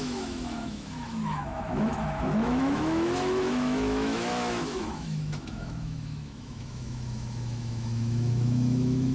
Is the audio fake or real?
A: fake